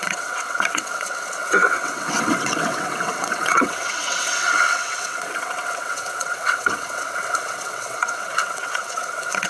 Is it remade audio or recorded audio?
remade